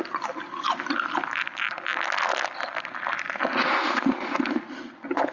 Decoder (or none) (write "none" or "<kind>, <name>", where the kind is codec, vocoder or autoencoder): none